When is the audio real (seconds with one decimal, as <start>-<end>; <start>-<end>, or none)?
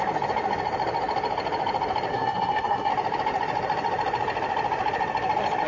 0.0-2.1; 2.9-5.7